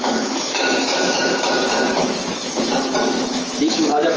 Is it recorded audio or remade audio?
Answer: remade